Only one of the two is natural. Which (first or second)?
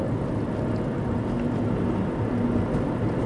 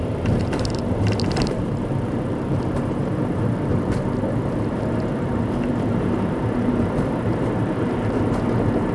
first